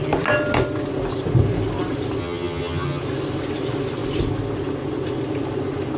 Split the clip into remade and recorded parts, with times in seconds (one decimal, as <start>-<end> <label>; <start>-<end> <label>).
0.0-2.2 recorded; 2.2-3.0 remade; 3.0-6.0 recorded